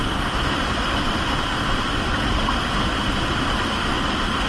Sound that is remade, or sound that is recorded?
recorded